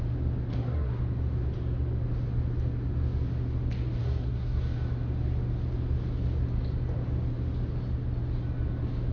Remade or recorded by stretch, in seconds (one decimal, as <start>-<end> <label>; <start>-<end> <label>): 0.0-0.5 recorded; 0.5-1.0 remade; 1.0-4.0 recorded; 4.0-4.6 remade; 4.6-9.1 recorded